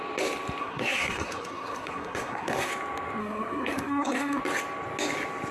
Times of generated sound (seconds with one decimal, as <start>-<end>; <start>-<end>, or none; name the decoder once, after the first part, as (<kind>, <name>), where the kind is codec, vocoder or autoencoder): 0.6-2.7 (codec, SNAC); 3.2-4.4